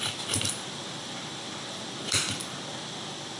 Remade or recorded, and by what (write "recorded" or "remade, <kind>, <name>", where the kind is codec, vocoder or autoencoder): recorded